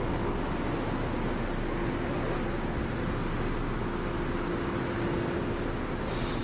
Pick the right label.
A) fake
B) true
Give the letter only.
B